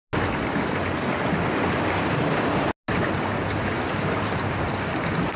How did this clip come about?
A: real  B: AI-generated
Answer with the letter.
A